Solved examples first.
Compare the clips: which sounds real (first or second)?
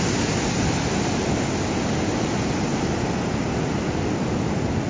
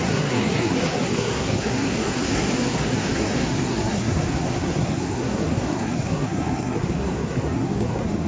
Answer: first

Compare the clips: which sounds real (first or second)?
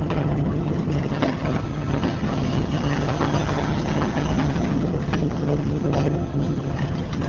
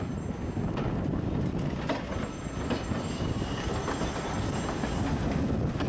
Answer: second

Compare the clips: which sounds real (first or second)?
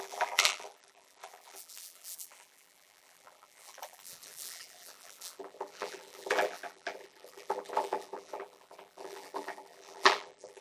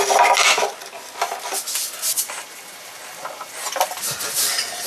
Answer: second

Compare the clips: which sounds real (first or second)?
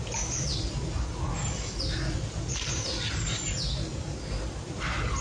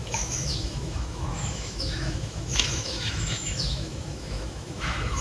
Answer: first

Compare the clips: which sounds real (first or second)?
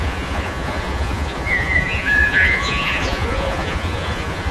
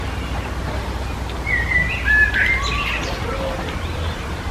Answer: second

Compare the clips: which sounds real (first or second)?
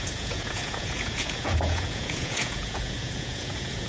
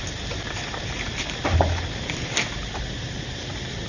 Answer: second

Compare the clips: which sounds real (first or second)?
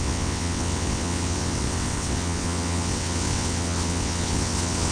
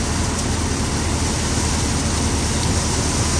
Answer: second